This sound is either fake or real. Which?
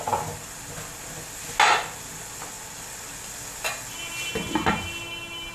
real